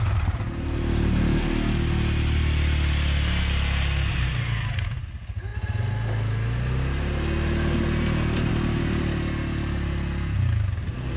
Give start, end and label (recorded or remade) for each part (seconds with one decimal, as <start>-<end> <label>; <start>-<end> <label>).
0.0-11.2 recorded